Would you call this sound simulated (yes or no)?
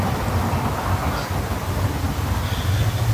no